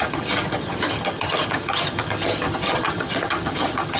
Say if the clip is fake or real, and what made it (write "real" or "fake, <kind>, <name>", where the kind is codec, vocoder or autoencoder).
fake, vocoder, HiFi-GAN